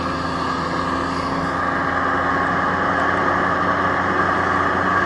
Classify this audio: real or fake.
real